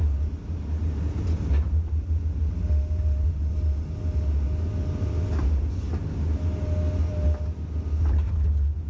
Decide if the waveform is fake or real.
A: real